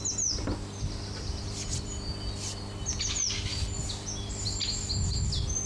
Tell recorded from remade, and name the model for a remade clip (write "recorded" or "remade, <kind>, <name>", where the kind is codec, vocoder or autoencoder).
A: recorded